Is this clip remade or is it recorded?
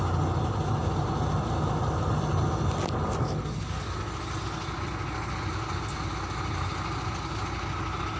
recorded